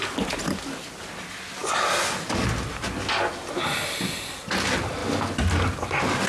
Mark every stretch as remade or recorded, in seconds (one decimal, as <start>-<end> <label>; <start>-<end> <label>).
0.0-6.3 recorded